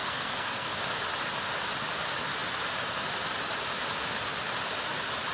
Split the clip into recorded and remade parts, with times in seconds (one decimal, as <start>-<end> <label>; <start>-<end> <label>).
0.0-1.0 remade; 1.0-5.3 recorded